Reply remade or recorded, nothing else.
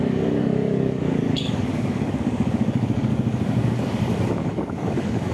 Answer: remade